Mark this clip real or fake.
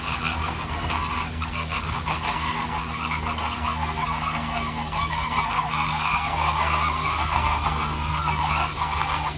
fake